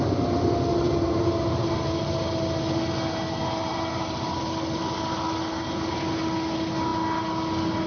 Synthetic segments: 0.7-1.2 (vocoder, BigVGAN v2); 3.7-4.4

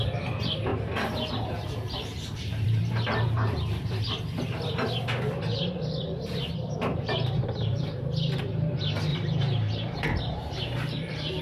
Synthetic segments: 0.7-4.0 (vocoder, BigVGAN v2); 6.9-7.8; 9.1-11.4

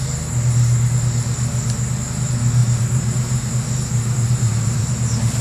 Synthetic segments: 2.6-4.9 (vocoder, BigVGAN v2)

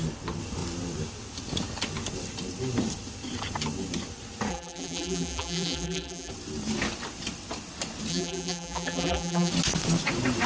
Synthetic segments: 4.5-6.3 (vocoder, BigVGAN v2); 8.1-9.5

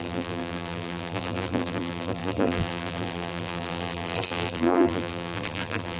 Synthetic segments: 0.0-6.0 (vocoder, BigVGAN v2)

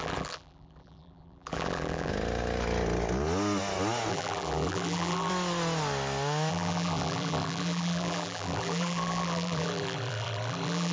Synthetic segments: 0.0-2.1 (vocoder, BigVGAN v2); 4.1-5.3; 6.5-10.9

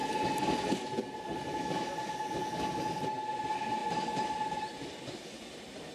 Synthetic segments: 3.8-5.9 (vocoder, BigVGAN v2)